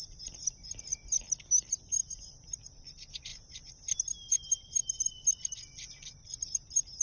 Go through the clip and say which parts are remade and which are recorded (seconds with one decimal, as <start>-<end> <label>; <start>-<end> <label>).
0.0-7.0 recorded